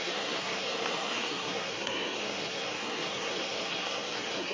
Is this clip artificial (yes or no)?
yes